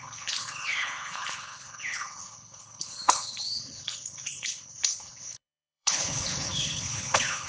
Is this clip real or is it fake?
fake